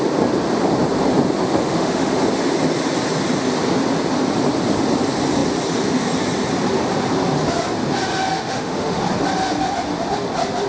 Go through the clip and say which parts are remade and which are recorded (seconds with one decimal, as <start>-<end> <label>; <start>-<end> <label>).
0.0-1.6 recorded; 1.6-2.1 remade; 2.1-8.3 recorded; 8.3-9.0 remade; 9.0-10.7 recorded